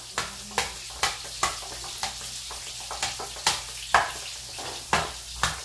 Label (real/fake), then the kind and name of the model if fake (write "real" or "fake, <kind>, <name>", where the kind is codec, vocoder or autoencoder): real